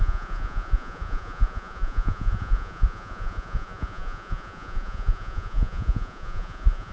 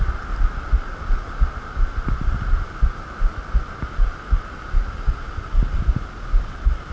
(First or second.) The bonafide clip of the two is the second